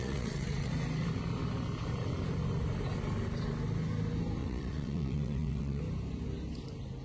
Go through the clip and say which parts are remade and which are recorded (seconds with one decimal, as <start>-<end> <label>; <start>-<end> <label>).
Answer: 0.0-0.7 remade; 0.7-4.4 recorded; 4.4-5.8 remade; 5.8-7.0 recorded